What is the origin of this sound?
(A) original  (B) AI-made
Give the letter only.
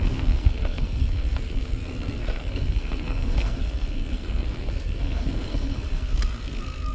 B